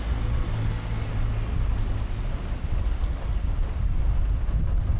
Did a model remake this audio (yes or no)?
no